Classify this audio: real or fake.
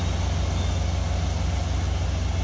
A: real